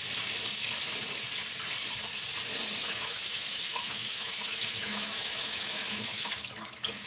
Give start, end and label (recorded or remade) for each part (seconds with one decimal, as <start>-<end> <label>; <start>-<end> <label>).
0.0-2.8 recorded; 2.8-7.1 remade